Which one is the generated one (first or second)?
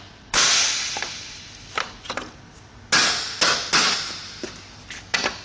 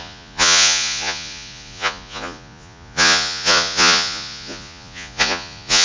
second